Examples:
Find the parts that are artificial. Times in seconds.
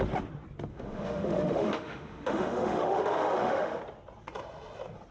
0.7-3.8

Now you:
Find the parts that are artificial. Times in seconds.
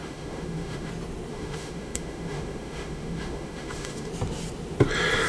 0.0-0.9; 1.3-4.1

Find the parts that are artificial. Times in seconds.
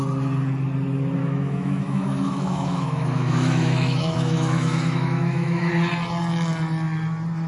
1.2-5.7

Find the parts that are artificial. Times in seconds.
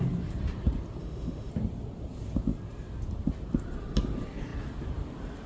1.0-1.5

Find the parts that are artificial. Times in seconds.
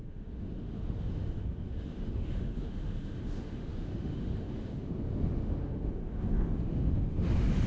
0.0-7.7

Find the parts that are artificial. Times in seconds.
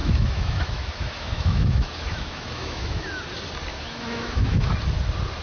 0.0-3.2; 3.7-4.7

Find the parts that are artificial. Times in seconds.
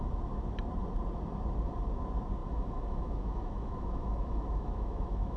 2.4-5.4